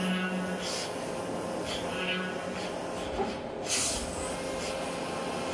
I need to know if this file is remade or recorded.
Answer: recorded